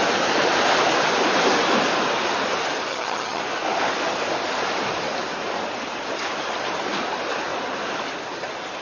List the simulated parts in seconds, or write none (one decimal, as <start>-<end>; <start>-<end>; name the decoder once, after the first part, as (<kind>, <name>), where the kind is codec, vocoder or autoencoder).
2.9-3.4 (vocoder, HiFi-GAN)